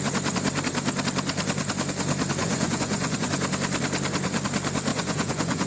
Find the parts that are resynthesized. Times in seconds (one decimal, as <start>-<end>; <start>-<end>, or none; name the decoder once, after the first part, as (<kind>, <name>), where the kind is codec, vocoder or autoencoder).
2.4-3.3 (vocoder, Vocos); 4.9-5.7